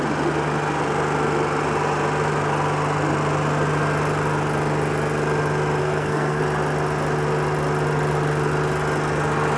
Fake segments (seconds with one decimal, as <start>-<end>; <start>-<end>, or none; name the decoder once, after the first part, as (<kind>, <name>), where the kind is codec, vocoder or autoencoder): 5.8-6.4 (codec, SNAC)